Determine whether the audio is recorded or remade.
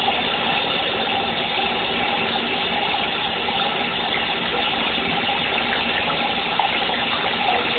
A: recorded